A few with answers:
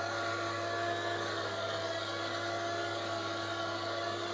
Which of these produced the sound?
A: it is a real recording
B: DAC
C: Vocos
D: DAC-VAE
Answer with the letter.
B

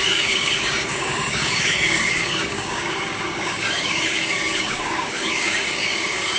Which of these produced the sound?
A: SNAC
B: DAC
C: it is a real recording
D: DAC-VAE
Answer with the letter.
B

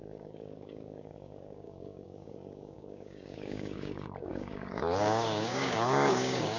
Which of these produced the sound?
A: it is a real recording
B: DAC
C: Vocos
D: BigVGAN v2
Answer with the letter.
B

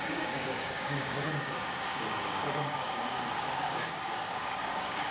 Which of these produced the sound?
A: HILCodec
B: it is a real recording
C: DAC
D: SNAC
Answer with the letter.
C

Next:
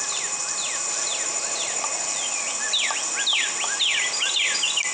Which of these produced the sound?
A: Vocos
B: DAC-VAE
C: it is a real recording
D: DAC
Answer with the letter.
C